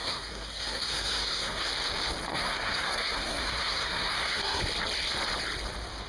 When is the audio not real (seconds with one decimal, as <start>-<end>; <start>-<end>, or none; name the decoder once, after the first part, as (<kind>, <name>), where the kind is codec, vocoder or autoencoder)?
0.0-1.7 (codec, SNAC); 2.3-4.6